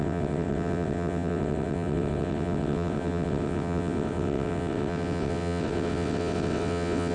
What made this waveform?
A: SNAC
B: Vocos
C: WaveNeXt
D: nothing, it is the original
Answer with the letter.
C